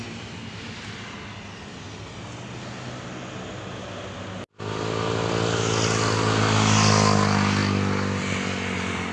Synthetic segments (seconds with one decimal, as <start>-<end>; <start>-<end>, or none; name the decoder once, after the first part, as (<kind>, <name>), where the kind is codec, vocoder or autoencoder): none